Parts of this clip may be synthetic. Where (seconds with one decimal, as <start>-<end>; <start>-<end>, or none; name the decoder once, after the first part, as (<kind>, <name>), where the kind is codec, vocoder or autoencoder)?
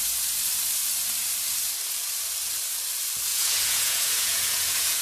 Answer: 3.3-5.0 (vocoder, Vocos)